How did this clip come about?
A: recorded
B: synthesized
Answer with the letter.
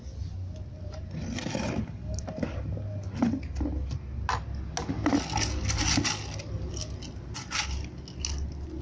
A